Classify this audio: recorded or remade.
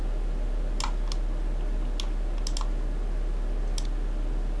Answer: recorded